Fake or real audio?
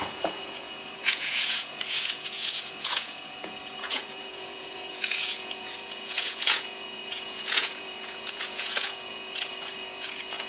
fake